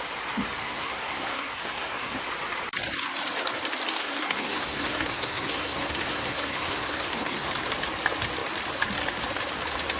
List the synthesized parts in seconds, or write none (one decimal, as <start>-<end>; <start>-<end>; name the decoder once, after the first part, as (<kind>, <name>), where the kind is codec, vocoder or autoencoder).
0.6-2.2 (codec, SNAC); 4.0-7.5